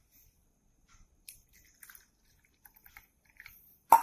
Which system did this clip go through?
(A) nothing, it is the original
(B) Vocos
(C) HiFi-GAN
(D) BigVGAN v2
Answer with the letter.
D